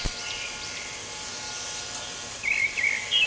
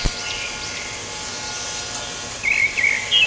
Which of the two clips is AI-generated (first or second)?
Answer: first